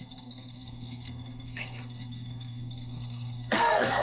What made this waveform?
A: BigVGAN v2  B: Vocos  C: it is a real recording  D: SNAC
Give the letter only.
D